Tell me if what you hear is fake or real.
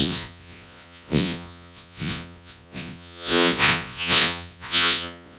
fake